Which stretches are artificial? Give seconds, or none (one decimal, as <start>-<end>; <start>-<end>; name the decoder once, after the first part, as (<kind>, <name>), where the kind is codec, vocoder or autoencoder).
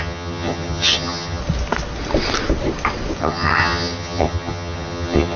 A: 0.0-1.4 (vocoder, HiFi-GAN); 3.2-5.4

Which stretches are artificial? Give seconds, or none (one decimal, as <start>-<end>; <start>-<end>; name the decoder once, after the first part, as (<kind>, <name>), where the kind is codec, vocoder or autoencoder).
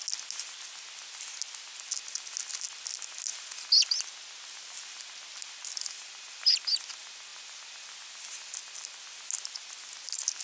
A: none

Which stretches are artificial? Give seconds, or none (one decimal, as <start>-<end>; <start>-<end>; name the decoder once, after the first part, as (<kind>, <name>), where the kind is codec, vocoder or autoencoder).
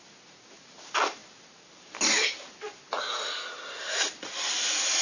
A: none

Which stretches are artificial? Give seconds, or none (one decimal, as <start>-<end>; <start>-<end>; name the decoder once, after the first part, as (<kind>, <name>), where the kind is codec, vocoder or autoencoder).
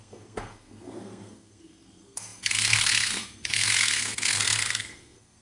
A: 0.0-5.4 (codec, SNAC)